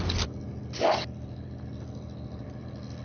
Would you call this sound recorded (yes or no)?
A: yes